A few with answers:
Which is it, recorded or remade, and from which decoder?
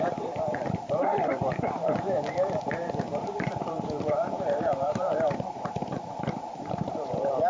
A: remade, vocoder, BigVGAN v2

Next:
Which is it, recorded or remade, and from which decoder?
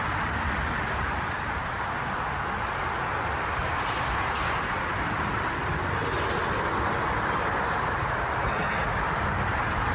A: recorded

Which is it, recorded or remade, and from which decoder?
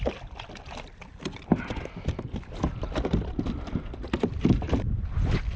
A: recorded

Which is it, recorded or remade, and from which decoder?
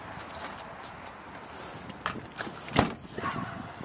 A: recorded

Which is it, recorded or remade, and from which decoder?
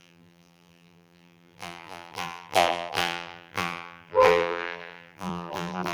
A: remade, vocoder, BigVGAN v2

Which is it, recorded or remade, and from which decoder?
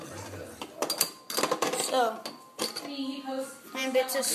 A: recorded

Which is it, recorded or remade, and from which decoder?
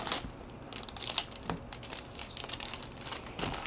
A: recorded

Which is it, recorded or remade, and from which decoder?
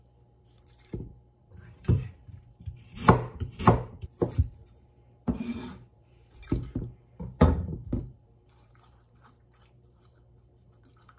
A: remade, vocoder, BigVGAN v2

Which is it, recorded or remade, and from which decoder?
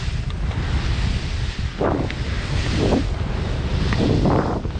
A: recorded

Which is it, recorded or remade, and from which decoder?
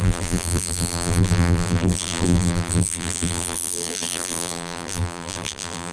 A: remade, vocoder, BigVGAN v2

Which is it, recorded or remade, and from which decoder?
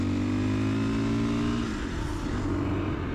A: recorded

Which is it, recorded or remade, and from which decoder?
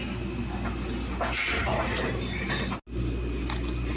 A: recorded